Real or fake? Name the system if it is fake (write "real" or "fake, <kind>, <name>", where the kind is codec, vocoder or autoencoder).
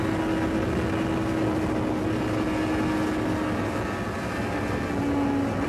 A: real